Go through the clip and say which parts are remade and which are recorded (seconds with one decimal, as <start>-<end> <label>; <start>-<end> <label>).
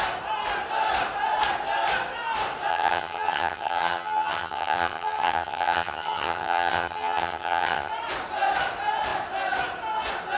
0.0-2.7 recorded; 2.7-7.9 remade; 7.9-10.4 recorded